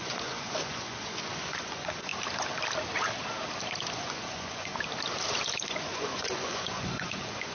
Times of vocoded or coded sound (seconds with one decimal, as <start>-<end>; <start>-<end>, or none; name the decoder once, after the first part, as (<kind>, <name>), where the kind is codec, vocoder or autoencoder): 0.0-2.1 (vocoder, Vocos); 3.9-4.7; 5.7-7.5